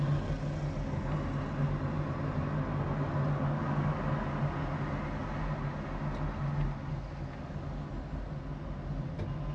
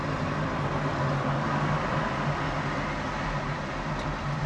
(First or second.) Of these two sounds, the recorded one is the first